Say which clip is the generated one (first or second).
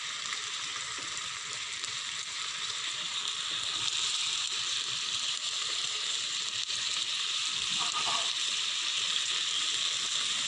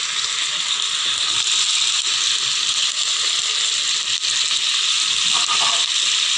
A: first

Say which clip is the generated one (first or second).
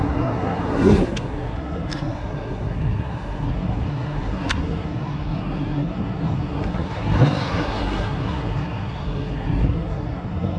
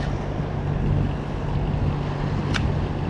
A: first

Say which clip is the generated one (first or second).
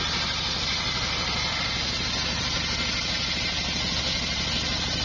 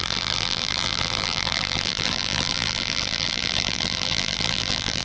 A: second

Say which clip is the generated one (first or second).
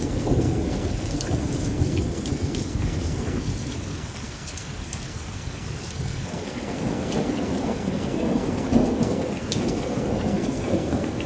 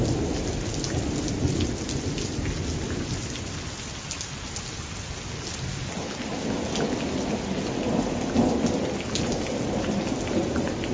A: first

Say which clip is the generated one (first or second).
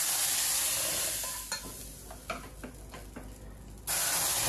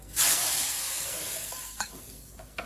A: second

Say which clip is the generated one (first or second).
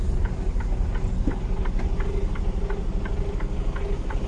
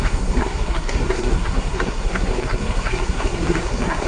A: second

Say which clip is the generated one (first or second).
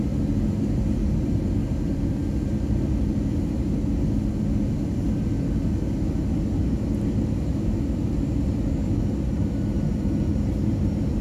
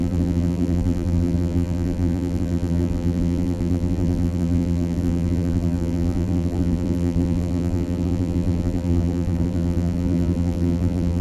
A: second